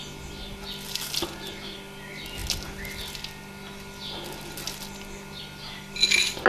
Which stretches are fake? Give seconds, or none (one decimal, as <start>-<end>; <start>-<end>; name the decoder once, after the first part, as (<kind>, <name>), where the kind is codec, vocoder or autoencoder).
none